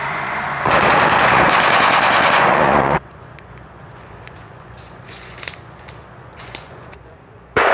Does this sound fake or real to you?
fake